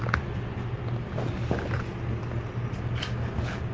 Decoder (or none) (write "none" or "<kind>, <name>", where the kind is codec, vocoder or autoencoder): none